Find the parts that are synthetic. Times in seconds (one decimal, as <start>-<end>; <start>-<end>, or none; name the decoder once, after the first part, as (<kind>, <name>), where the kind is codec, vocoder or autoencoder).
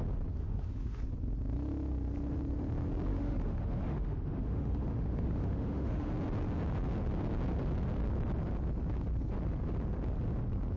0.4-1.0 (autoencoder, DAC-VAE); 3.1-6.1